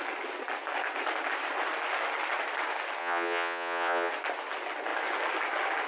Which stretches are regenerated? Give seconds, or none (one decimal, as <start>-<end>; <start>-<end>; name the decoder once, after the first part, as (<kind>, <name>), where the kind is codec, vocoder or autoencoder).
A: 3.0-4.1 (vocoder, WaveNeXt)